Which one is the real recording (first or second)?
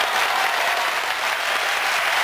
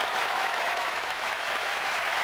first